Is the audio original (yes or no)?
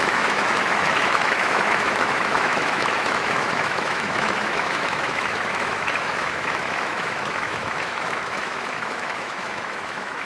no